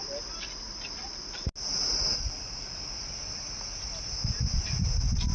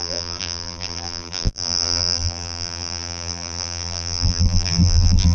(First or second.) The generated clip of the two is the second